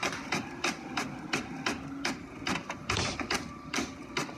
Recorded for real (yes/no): yes